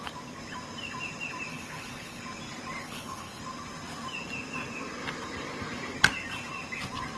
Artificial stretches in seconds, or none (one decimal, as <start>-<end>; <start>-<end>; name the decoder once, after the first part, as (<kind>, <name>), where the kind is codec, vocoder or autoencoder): 1.5-2.2 (codec, HILCodec); 2.8-3.4